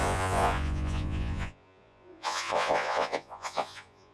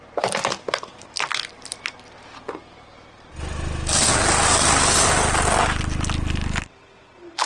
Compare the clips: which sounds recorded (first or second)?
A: second